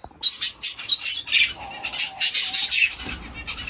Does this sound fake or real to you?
real